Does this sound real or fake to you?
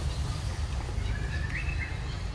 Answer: real